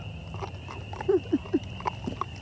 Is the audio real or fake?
real